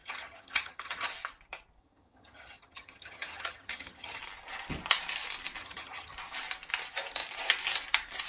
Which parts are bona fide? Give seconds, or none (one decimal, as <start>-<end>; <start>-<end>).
1.1-1.8; 4.2-5.6; 6.1-8.3